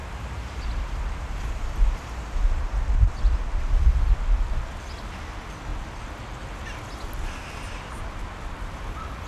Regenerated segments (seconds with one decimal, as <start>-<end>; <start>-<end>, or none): 0.0-2.8